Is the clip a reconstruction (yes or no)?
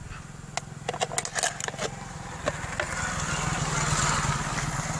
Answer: no